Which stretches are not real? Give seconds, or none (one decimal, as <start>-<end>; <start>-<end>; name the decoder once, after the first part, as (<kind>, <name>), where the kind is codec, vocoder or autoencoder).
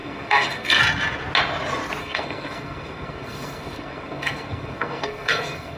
0.0-0.8 (codec, SNAC); 2.0-5.8